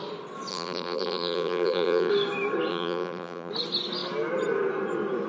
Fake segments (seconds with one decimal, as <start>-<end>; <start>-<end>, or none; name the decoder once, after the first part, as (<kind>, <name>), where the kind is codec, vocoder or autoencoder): 0.5-2.1 (vocoder, BigVGAN v2); 2.7-3.5